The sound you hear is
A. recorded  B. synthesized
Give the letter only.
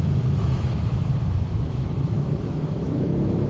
B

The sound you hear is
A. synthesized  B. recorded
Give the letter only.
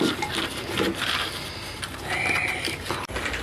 B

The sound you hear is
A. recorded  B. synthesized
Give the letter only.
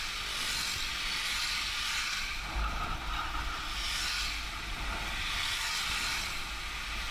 A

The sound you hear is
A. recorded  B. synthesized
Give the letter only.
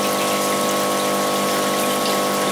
A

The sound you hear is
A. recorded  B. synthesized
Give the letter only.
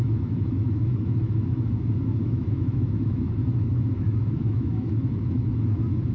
B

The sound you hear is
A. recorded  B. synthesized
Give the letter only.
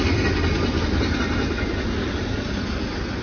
A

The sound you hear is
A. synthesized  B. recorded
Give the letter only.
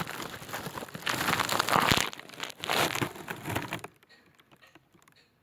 B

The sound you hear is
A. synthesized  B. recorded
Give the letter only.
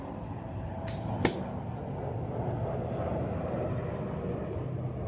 B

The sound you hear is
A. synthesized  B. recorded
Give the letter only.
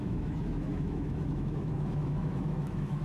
A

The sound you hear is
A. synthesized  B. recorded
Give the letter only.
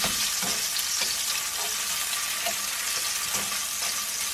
B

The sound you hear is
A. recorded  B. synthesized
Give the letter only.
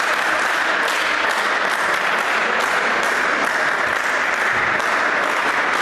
A